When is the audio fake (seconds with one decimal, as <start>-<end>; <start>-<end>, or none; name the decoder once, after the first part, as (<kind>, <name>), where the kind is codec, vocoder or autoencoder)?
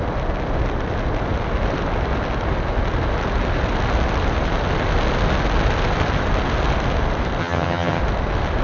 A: 7.4-8.0 (vocoder, HiFi-GAN)